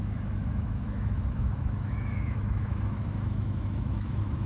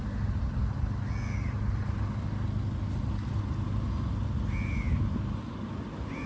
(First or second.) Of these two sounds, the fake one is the first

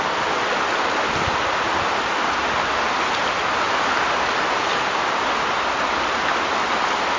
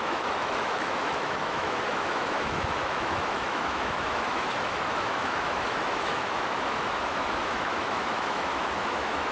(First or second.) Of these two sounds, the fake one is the second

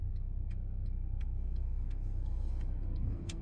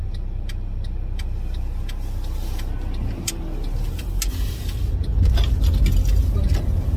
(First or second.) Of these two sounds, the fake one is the first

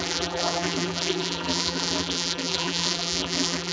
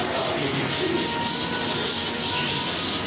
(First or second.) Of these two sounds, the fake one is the first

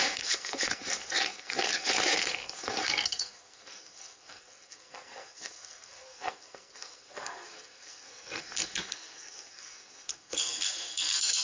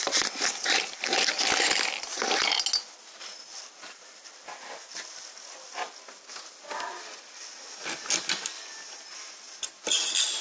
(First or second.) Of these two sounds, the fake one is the first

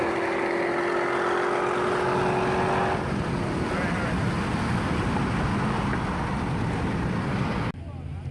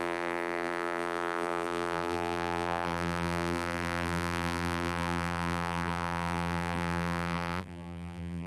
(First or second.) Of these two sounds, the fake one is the second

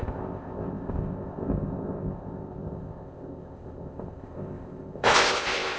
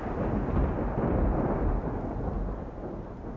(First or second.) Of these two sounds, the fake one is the first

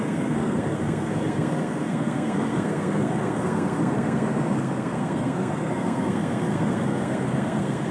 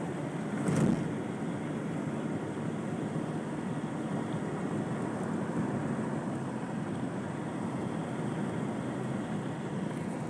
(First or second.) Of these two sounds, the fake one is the first